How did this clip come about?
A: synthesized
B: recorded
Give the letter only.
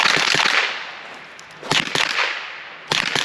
B